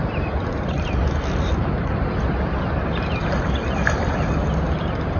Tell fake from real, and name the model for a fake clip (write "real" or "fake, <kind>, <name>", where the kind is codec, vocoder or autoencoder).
fake, vocoder, BigVGAN v2